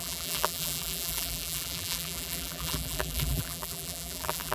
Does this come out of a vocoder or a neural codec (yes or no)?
yes